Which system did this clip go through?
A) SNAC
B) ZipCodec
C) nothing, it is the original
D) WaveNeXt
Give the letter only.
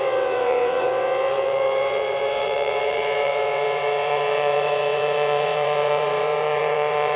D